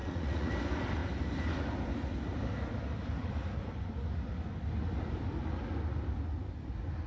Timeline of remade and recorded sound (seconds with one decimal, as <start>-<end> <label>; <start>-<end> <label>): 0.0-0.5 remade; 0.5-7.1 recorded